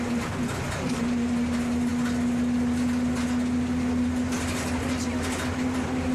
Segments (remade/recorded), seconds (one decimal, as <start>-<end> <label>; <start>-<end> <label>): 0.0-6.1 recorded